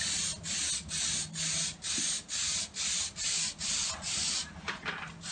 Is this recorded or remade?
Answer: recorded